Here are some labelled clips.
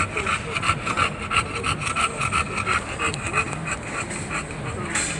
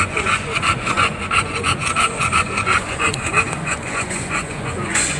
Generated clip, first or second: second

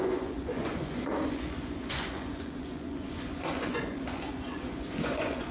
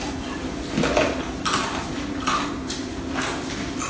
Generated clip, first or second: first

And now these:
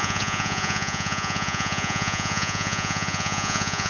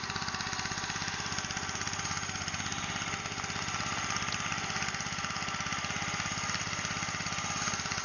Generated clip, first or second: first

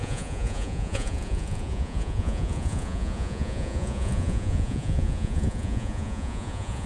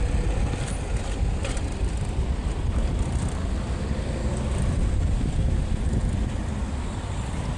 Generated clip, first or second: first